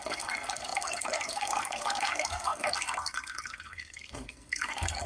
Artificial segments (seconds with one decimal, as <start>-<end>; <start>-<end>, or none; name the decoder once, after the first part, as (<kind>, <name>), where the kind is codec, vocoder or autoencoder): 0.0-5.1 (codec, SNAC)